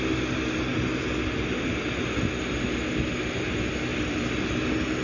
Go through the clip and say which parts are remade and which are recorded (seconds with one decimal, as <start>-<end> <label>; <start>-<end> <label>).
0.0-3.9 recorded; 3.9-4.5 remade; 4.5-5.0 recorded